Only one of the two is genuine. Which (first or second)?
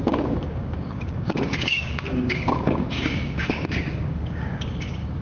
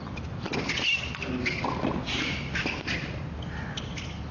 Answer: second